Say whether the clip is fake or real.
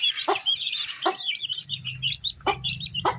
fake